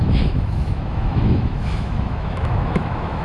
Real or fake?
fake